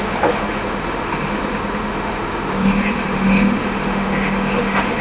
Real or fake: fake